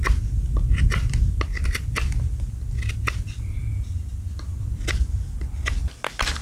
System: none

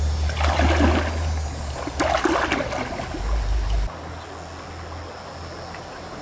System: none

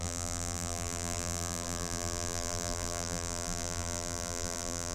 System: vocoder, BigVGAN v2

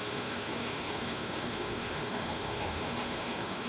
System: autoencoder, DAC-VAE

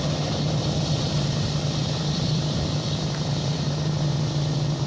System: vocoder, BigVGAN v2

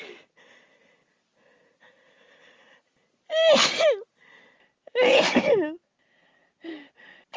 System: none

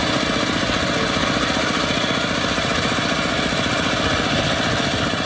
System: none